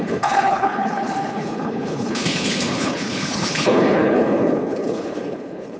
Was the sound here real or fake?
fake